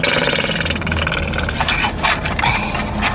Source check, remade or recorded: recorded